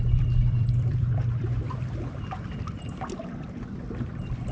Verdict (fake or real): fake